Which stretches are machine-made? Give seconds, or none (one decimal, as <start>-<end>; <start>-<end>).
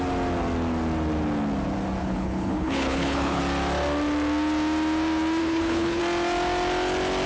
2.0-3.4; 5.4-6.0